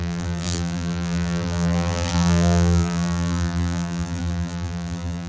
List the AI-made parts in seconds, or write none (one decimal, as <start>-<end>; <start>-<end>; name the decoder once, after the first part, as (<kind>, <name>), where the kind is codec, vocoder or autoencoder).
0.0-5.3 (vocoder, BigVGAN v2)